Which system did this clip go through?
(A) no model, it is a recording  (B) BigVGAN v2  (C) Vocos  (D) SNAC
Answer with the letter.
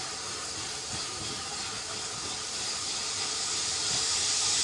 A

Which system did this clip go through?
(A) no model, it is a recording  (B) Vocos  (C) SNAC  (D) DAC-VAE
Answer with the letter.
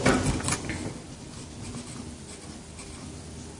A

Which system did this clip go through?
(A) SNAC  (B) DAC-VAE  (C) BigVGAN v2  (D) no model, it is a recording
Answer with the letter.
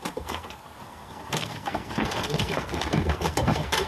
A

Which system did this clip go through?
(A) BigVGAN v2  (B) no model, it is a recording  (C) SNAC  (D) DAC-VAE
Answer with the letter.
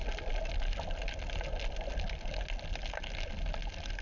B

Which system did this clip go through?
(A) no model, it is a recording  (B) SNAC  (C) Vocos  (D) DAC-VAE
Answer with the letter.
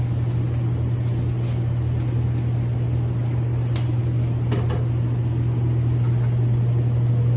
A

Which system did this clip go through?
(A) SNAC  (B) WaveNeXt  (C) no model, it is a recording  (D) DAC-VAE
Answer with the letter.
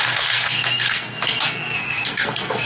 A